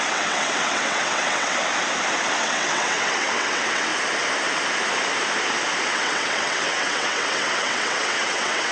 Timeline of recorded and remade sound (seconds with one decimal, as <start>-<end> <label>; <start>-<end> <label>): 0.0-1.6 remade; 1.6-2.4 recorded; 2.4-3.9 remade; 3.9-5.9 recorded; 5.9-8.7 remade